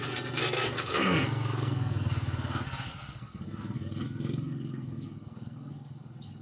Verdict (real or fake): fake